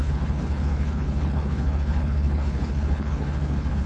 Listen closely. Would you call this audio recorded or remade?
remade